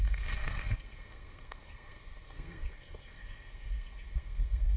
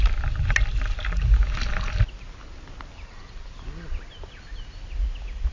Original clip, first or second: second